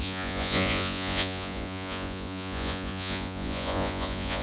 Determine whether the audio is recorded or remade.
remade